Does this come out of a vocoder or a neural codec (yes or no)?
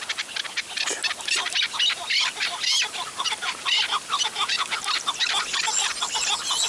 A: no